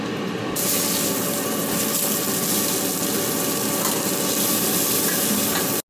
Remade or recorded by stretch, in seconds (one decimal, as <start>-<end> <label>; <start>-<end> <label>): 0.0-5.9 recorded